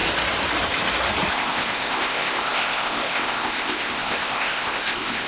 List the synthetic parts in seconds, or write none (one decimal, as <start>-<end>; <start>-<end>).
1.3-5.3